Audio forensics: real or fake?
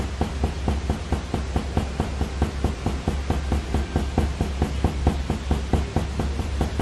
real